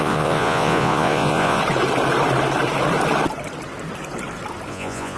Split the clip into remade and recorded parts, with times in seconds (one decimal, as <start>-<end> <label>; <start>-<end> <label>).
0.0-1.6 remade; 1.6-4.7 recorded; 4.7-5.2 remade